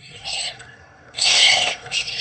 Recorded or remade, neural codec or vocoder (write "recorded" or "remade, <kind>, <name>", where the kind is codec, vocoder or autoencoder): remade, codec, SNAC